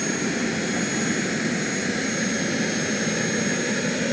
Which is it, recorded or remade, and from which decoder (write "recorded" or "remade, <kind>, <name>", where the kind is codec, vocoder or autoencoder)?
recorded